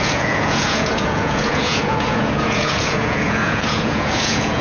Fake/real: fake